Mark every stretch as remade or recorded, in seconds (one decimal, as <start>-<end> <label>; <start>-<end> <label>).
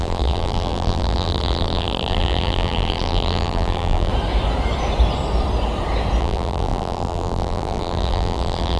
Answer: 0.0-4.1 remade; 4.1-6.2 recorded; 6.2-8.8 remade